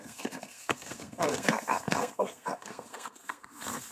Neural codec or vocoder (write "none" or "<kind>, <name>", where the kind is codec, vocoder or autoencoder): codec, SNAC